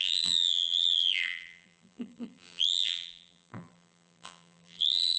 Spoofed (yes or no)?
yes